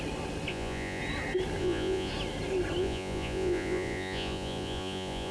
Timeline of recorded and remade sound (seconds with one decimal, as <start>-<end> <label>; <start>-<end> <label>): 0.0-0.5 recorded; 0.5-1.0 remade; 1.0-1.6 recorded; 1.6-2.1 remade; 2.1-2.8 recorded; 2.8-5.3 remade